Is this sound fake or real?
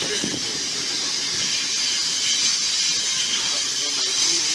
real